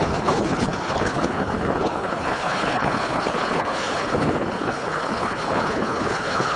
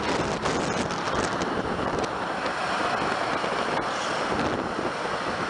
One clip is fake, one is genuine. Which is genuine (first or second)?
second